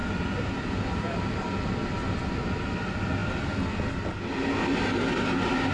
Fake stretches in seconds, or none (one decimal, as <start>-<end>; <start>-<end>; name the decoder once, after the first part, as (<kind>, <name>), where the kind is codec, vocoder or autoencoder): none